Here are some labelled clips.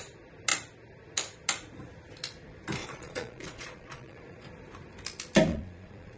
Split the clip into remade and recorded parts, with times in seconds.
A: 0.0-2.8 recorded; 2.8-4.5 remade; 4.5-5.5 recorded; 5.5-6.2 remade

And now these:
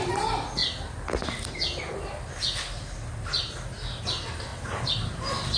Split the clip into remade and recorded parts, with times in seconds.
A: 0.0-5.6 recorded

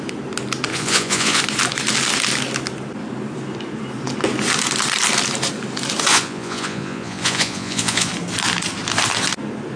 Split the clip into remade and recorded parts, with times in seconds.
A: 0.0-0.7 recorded; 0.7-1.4 remade; 1.4-6.1 recorded; 6.1-8.1 remade; 8.1-9.8 recorded

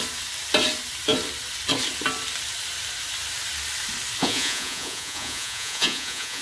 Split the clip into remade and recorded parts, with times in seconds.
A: 0.0-4.2 recorded; 4.2-6.4 remade

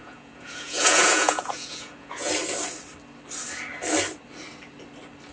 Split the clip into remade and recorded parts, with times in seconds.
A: 0.0-2.3 remade; 2.3-5.3 recorded

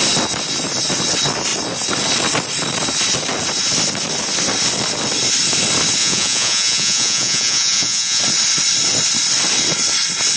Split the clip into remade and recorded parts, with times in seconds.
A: 0.0-6.0 recorded; 6.0-8.2 remade; 8.2-10.4 recorded

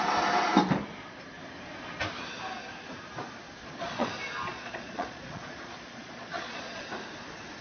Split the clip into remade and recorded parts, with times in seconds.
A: 0.0-3.6 recorded; 3.6-4.1 remade; 4.1-4.5 recorded; 4.5-6.8 remade; 6.8-7.6 recorded

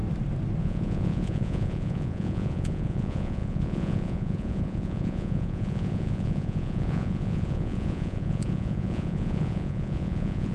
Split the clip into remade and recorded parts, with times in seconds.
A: 0.0-0.6 recorded; 0.6-10.5 remade